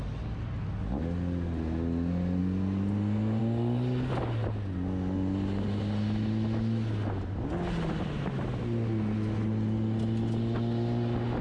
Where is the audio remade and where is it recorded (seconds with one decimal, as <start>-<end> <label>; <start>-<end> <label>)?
0.0-11.4 recorded